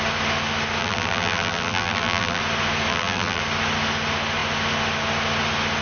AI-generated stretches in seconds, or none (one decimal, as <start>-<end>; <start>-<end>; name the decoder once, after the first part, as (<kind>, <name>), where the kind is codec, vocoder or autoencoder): 0.8-2.4 (vocoder, BigVGAN v2); 2.9-3.4